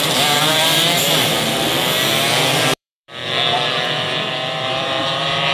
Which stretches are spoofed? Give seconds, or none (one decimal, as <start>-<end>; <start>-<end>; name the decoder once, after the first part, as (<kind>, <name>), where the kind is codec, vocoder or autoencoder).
0.0-5.5 (vocoder, BigVGAN v2)